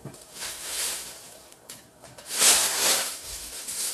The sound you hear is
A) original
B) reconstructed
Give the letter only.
B